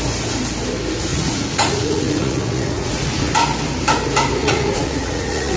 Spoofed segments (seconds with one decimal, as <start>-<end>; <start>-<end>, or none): 1.1-3.3; 4.4-5.6